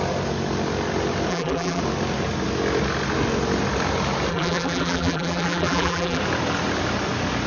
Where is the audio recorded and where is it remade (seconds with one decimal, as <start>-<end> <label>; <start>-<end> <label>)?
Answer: 0.0-1.3 recorded; 1.3-1.8 remade; 1.8-4.3 recorded; 4.3-6.2 remade; 6.2-7.5 recorded